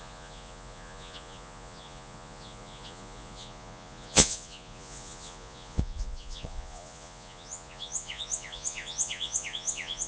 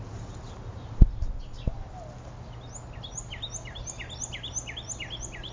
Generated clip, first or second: first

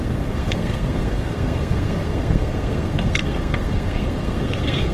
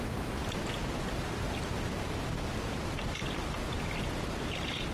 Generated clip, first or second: first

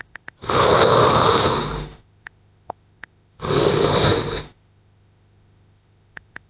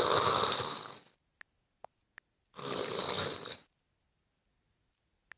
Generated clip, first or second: first